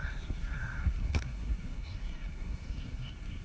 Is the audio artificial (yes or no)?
yes